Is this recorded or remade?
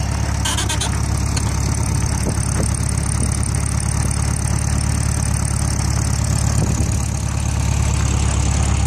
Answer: recorded